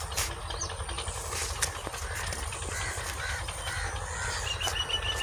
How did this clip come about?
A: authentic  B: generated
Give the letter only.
A